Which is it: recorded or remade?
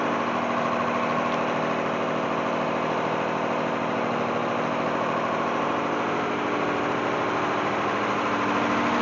recorded